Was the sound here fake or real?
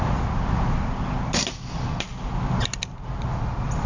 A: real